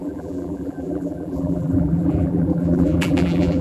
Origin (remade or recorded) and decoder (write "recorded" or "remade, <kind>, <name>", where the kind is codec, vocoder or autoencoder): remade, vocoder, BigVGAN v2